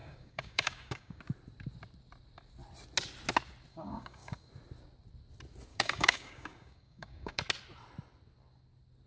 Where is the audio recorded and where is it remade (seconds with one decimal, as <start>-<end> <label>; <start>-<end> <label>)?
0.0-1.2 remade; 1.2-3.7 recorded; 3.7-4.5 remade; 4.5-5.7 recorded; 5.7-7.4 remade; 7.4-9.1 recorded